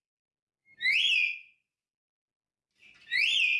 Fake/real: real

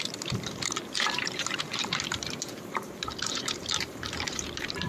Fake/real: fake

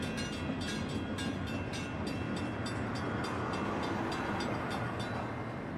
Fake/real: real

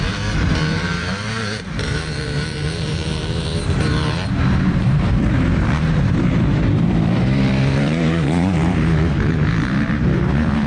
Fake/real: fake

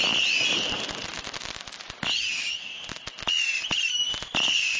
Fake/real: real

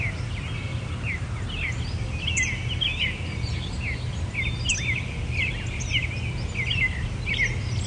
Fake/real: real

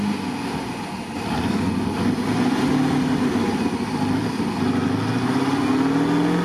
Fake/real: real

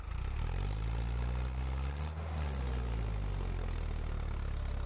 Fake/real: real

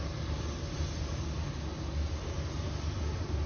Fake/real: real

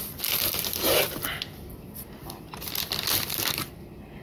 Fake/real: real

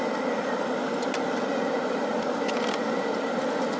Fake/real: real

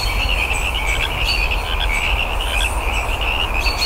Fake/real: real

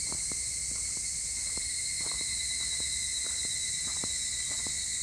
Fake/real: real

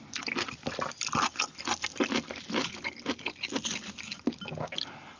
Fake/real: real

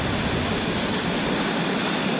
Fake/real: real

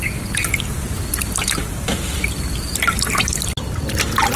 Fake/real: fake